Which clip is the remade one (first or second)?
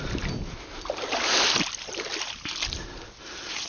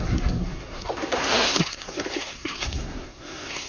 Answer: second